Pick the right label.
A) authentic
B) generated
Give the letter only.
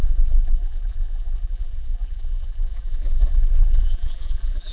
B